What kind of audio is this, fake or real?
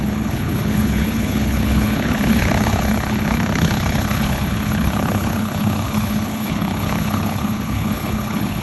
fake